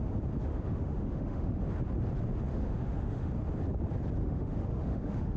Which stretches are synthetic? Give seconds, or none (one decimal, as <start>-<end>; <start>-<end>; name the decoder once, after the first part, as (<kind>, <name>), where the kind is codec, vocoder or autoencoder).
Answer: 0.5-1.6 (autoencoder, DAC-VAE); 2.5-3.3; 4.2-5.4